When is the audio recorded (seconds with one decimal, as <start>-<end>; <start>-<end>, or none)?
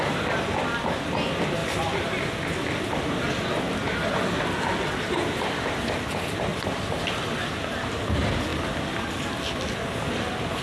0.0-6.5; 7.8-10.6